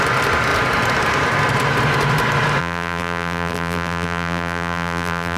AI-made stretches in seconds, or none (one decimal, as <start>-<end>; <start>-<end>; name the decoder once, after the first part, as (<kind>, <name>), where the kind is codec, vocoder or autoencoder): 2.6-5.4 (vocoder, BigVGAN v2)